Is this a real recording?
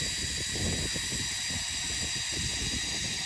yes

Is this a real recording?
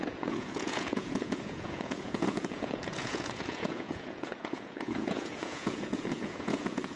no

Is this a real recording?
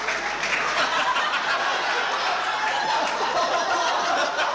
yes